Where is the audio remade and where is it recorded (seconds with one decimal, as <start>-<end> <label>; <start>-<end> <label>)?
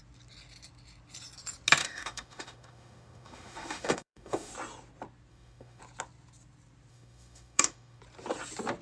0.0-1.8 recorded; 1.8-4.5 remade; 4.5-5.3 recorded; 5.3-5.8 remade; 5.8-6.9 recorded; 6.9-8.0 remade; 8.0-8.8 recorded